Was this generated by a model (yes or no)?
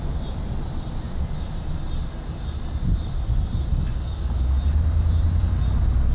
no